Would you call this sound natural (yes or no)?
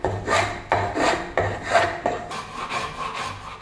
yes